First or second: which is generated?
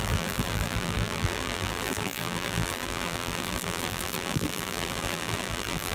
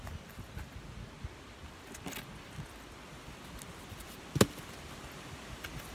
first